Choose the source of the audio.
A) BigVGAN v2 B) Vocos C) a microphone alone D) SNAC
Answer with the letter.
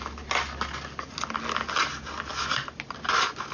C